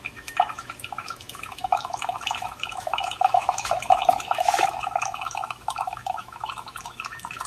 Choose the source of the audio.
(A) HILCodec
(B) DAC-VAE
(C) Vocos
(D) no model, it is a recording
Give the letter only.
B